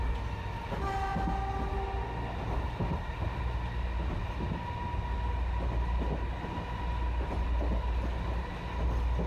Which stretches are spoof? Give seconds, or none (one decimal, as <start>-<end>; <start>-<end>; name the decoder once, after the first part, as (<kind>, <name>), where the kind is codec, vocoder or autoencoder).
none

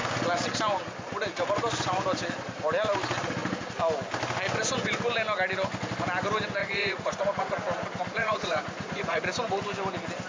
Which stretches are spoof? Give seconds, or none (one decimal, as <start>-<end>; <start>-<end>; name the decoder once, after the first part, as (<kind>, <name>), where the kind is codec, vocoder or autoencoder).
6.6-7.5 (vocoder, Vocos); 8.2-9.2

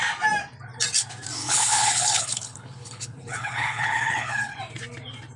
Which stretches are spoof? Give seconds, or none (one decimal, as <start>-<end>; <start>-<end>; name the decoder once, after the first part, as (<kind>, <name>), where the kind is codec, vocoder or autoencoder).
1.4-4.6 (codec, HILCodec)

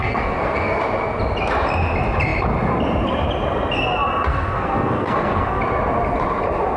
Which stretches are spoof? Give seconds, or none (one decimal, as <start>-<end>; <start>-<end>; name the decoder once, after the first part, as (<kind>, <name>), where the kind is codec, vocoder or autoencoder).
0.0-0.8 (codec, SNAC); 4.3-5.6

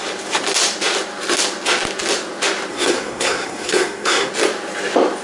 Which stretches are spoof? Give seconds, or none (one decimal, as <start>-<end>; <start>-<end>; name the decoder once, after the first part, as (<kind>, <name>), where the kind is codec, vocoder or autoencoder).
2.7-4.3 (codec, SNAC)